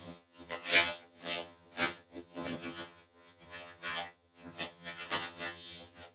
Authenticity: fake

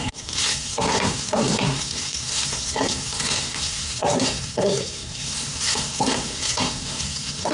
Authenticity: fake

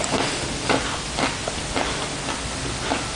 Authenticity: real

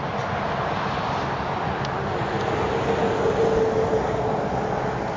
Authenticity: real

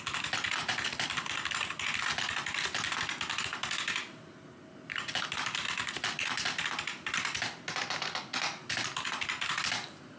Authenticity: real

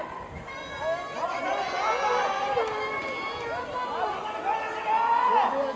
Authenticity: real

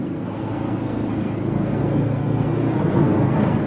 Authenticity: fake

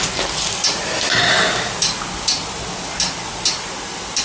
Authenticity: real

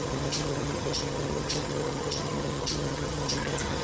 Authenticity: fake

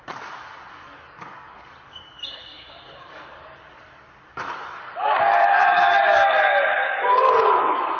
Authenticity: fake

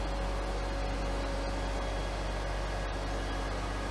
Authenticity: real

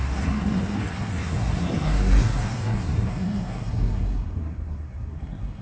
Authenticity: fake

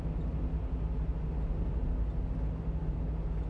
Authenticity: real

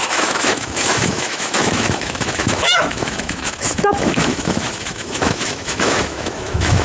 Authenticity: fake